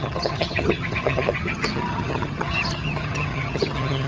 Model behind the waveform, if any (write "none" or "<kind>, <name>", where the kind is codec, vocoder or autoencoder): vocoder, HiFi-GAN